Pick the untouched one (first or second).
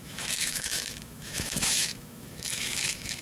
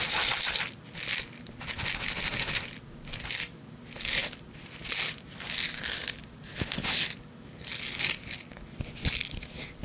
second